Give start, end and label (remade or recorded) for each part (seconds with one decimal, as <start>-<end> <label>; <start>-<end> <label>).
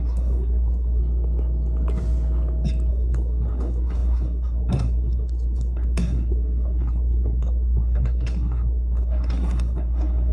0.0-1.0 remade; 1.0-2.9 recorded; 2.9-10.3 remade